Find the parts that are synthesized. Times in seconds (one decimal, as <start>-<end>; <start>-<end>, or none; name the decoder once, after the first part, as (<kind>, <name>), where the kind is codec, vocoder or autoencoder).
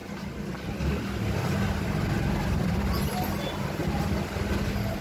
none